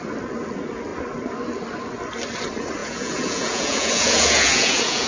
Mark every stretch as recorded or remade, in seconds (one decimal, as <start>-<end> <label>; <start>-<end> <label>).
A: 0.0-2.8 recorded; 2.8-5.1 remade